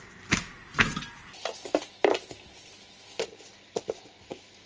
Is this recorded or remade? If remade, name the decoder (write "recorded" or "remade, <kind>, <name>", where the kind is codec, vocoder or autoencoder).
recorded